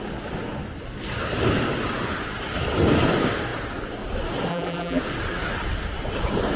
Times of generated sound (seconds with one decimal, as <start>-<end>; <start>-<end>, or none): 4.5-5.0